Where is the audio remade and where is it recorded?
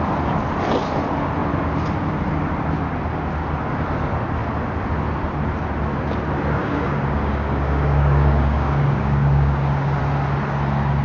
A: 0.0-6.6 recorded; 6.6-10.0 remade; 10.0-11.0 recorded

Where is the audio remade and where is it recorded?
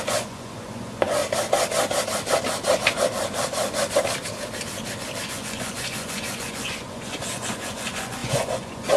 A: 0.0-1.2 remade; 1.2-5.3 recorded; 5.3-9.0 remade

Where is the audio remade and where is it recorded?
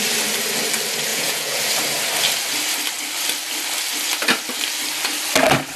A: 0.0-1.1 recorded; 1.1-1.6 remade; 1.6-5.8 recorded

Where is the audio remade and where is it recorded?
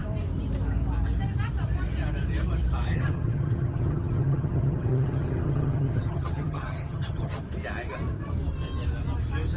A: 0.0-2.9 recorded; 2.9-7.4 remade; 7.4-9.6 recorded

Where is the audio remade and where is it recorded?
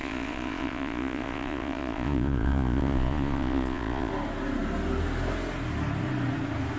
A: 0.0-4.1 remade; 4.1-6.8 recorded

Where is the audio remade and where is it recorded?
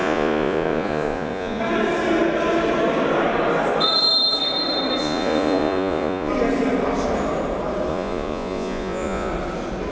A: 0.0-1.6 remade; 1.6-5.0 recorded; 5.0-6.3 remade; 6.3-7.9 recorded; 7.9-9.3 remade; 9.3-9.9 recorded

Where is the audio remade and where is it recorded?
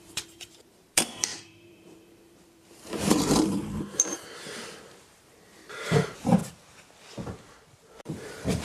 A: 0.0-6.4 remade; 6.4-8.0 recorded; 8.0-8.6 remade